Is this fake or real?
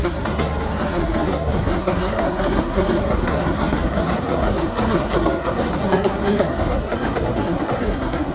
fake